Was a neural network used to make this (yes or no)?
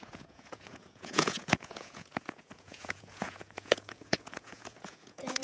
yes